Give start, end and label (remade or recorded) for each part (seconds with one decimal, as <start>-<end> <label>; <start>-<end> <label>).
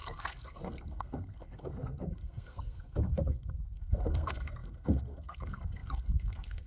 0.0-6.7 remade